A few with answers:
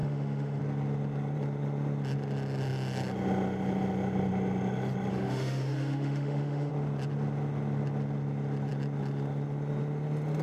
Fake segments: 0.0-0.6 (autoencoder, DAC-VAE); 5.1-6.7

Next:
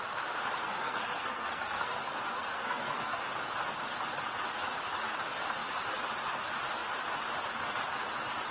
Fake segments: 0.6-3.2 (codec, SNAC)

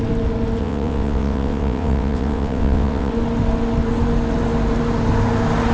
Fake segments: 0.6-3.1 (vocoder, WaveNeXt)